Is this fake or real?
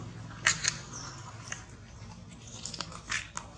real